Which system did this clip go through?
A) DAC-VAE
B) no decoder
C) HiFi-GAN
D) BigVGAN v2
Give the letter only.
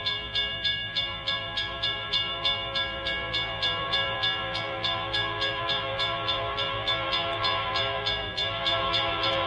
D